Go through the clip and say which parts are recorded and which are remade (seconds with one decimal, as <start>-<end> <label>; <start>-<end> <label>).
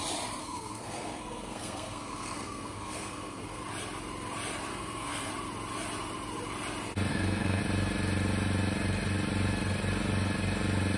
0.0-0.4 recorded; 0.4-3.6 remade; 3.6-4.7 recorded; 4.7-5.3 remade; 5.3-7.1 recorded; 7.1-7.6 remade; 7.6-11.0 recorded